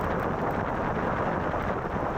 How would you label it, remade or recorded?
recorded